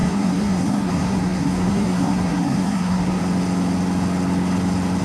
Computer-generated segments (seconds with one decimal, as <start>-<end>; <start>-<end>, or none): 0.0-3.2